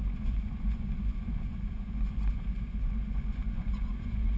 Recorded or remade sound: remade